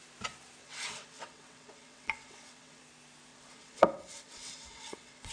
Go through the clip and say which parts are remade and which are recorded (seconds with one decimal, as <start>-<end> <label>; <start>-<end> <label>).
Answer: 0.0-0.6 recorded; 0.6-2.8 remade; 2.8-3.3 recorded; 3.3-5.3 remade